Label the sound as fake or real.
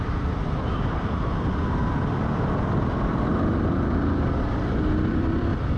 fake